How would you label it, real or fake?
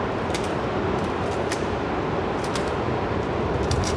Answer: real